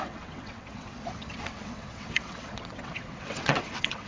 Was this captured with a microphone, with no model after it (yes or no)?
no